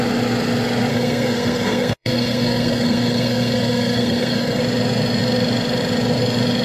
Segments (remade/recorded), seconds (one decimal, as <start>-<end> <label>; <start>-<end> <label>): 0.0-0.9 recorded; 0.9-4.6 remade; 4.6-6.6 recorded